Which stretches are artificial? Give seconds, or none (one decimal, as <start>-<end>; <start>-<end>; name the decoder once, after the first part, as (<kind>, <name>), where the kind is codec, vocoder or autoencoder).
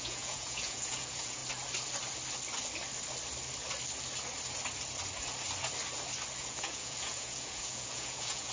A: 0.0-1.4 (vocoder, Vocos); 6.4-8.5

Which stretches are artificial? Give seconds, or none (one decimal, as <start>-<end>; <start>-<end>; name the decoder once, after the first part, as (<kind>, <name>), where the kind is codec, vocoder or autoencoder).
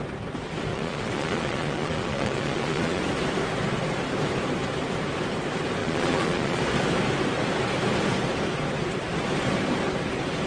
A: 0.7-3.0 (vocoder, Vocos); 5.8-6.6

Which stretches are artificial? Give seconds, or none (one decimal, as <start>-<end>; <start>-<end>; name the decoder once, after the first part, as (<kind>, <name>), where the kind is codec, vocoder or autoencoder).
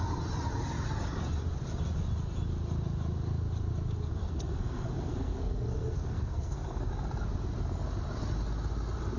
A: 4.2-6.9 (codec, SNAC)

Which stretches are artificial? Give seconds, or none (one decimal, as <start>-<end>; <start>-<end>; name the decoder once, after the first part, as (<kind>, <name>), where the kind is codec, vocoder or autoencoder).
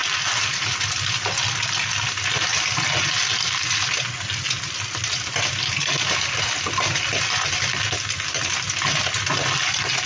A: none